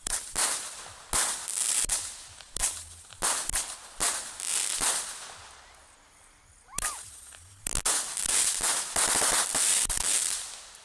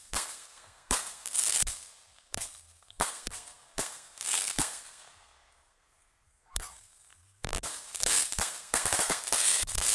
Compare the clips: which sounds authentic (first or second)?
first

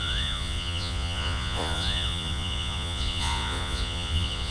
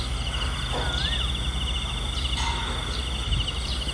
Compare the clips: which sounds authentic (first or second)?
second